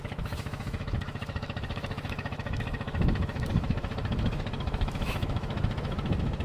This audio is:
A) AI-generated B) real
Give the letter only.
A